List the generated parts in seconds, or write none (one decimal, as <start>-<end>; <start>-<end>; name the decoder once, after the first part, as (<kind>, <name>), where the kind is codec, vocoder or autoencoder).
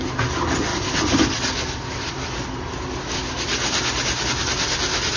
none